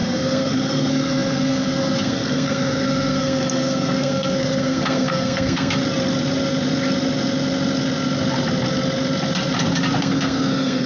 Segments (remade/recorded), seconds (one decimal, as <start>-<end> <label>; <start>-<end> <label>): 0.0-5.8 remade; 5.8-10.0 recorded; 10.0-10.9 remade